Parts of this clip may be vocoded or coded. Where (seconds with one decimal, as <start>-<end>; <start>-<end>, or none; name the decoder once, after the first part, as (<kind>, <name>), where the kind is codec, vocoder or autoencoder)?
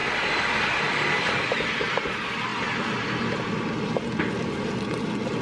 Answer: none